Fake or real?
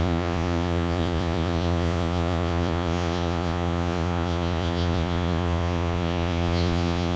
fake